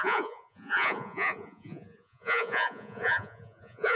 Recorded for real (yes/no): no